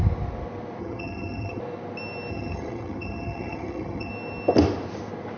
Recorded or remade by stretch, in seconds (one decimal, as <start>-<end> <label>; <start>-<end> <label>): 0.0-0.8 recorded; 0.8-1.6 remade; 1.6-2.3 recorded; 2.3-4.1 remade; 4.1-5.4 recorded